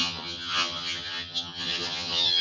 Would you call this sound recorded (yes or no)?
no